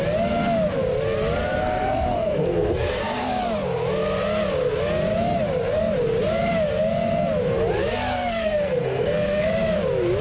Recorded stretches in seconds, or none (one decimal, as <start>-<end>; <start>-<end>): 0.0-1.4; 3.4-8.1; 9.5-10.2